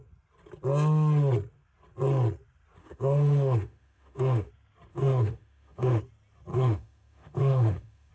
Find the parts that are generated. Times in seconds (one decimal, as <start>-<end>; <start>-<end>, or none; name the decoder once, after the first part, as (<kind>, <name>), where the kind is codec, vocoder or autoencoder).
2.8-4.5 (autoencoder, DAC-VAE); 4.9-6.0; 6.5-8.1